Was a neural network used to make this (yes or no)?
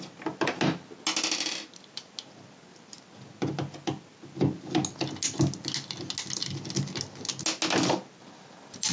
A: no